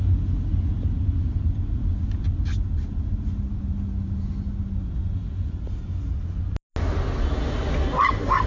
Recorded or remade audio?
recorded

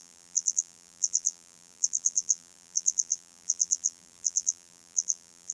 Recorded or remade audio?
remade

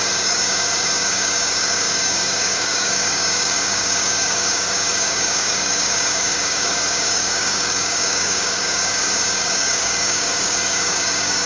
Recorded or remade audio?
remade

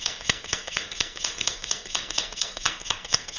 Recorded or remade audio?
remade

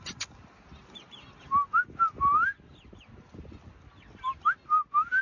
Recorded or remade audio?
recorded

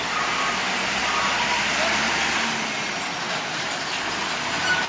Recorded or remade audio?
recorded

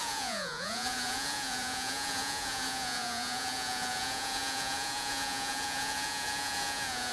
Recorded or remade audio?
remade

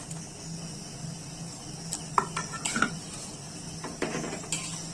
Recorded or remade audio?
recorded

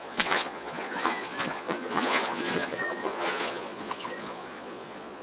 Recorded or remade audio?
remade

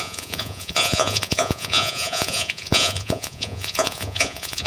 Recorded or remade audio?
remade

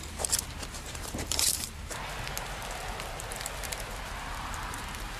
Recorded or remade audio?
remade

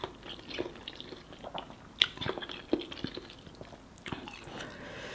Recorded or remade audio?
recorded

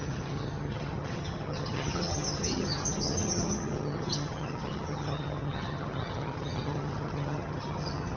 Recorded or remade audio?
remade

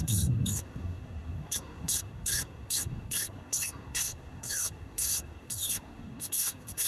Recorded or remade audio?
remade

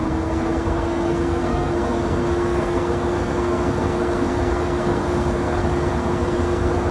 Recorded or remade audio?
remade